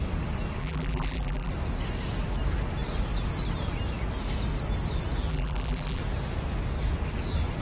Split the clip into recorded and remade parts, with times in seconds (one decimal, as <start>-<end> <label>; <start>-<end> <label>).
0.0-0.6 recorded; 0.6-1.5 remade; 1.5-5.3 recorded; 5.3-6.0 remade; 6.0-7.6 recorded